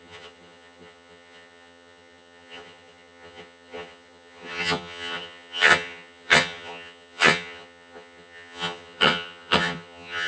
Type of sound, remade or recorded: remade